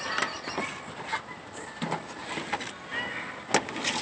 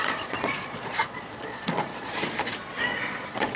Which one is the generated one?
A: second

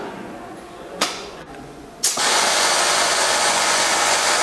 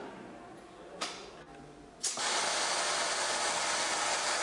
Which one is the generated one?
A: first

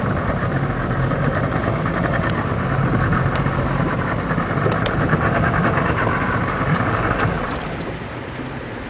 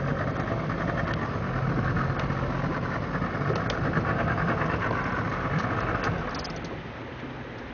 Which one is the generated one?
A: first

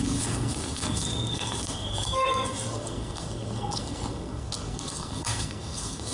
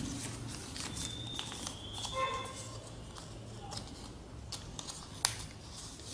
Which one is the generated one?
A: first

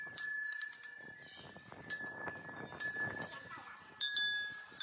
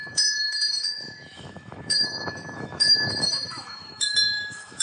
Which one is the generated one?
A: second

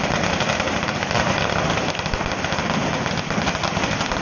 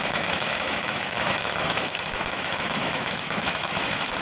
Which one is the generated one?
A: second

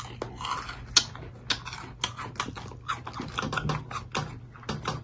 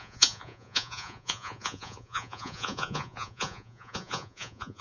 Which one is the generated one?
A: second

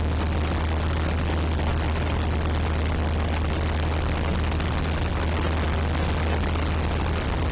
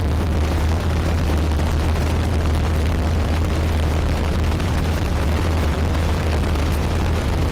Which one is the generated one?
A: second